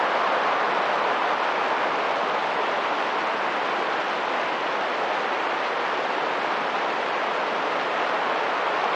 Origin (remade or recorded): recorded